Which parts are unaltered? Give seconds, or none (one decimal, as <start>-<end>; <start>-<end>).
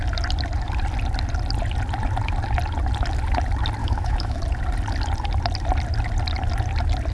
0.0-3.8; 4.4-7.1